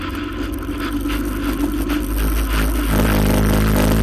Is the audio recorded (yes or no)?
yes